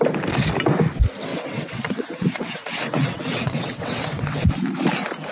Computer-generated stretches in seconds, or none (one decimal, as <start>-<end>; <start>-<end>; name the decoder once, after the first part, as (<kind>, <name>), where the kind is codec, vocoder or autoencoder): 1.3-4.5 (vocoder, WaveNeXt)